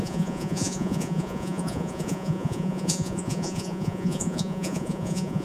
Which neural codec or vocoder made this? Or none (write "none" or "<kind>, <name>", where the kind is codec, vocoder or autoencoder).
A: vocoder, Vocos